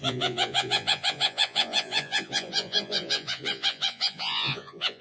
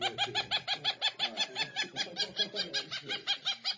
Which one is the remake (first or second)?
first